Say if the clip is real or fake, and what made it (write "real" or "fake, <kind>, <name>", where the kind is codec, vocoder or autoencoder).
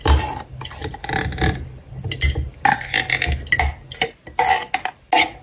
real